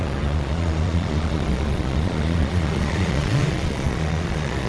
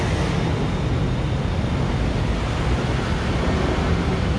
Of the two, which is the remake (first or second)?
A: first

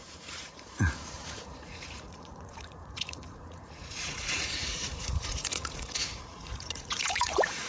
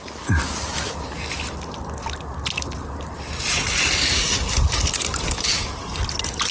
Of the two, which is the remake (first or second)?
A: first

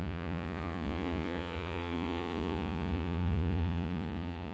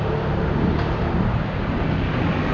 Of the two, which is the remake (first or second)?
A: first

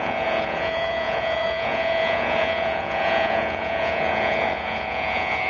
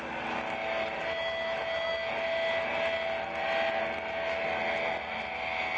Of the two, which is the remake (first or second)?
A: first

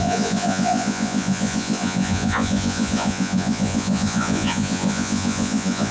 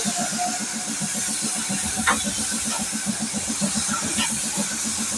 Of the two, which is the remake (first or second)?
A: first